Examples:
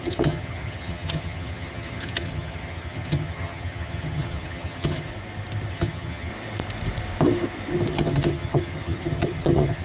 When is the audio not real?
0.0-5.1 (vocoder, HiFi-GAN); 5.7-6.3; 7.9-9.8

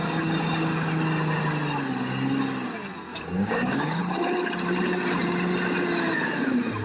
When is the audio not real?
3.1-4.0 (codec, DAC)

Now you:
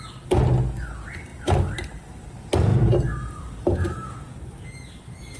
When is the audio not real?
1.3-2.3 (vocoder, BigVGAN v2); 2.7-4.3

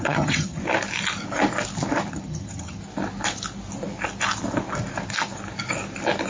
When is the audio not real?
0.0-0.6 (vocoder, HiFi-GAN); 2.1-2.8